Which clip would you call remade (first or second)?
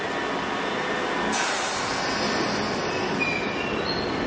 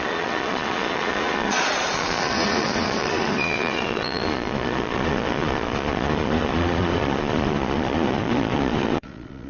second